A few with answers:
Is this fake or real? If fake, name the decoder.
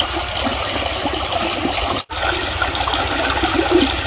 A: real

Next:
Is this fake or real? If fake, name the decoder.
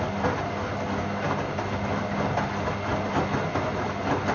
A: real